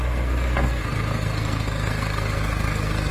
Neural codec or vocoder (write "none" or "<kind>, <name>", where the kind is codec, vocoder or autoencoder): codec, SNAC